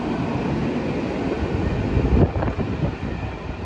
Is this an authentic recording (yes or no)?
yes